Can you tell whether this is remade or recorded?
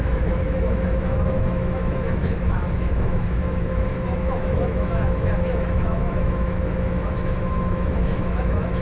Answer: remade